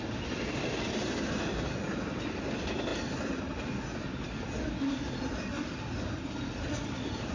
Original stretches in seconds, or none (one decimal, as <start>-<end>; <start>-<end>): 0.0-7.3